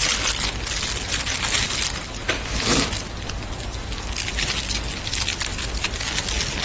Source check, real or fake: real